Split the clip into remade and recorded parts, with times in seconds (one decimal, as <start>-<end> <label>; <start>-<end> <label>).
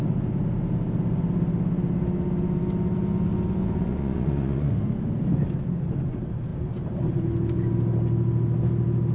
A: 0.0-3.6 recorded; 3.6-4.7 remade; 4.7-9.1 recorded